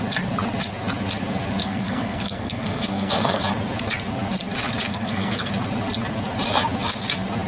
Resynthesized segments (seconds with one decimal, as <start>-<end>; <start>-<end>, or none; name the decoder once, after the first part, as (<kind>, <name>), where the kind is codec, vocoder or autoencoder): 1.6-3.4 (codec, SNAC); 4.9-5.5